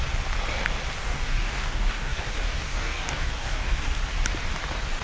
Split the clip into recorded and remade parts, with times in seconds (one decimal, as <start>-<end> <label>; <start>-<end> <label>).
0.0-1.0 recorded; 1.0-4.0 remade; 4.0-5.0 recorded